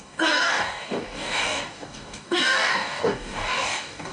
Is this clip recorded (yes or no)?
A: no